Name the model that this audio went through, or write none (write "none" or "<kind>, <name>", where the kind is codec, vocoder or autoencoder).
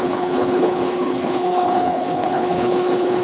codec, HILCodec